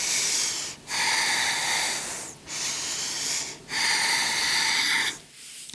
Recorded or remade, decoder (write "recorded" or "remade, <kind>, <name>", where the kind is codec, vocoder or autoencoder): recorded